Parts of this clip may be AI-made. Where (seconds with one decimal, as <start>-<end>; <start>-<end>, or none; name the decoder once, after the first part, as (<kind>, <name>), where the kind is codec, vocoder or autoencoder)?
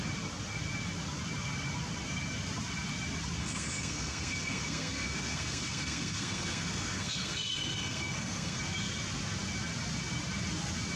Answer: 3.4-8.6 (codec, SNAC)